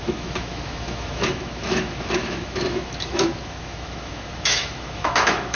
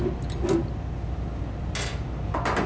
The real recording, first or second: second